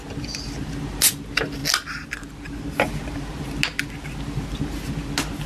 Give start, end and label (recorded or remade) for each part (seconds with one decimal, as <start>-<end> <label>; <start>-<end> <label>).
0.0-5.5 recorded